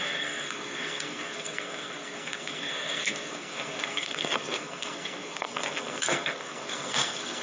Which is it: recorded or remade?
remade